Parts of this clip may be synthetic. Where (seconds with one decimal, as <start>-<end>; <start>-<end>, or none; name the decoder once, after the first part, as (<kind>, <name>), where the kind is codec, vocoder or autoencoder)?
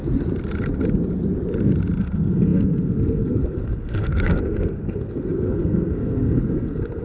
2.0-7.0 (codec, SNAC)